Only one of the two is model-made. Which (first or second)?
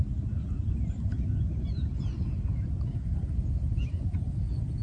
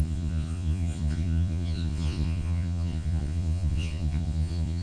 second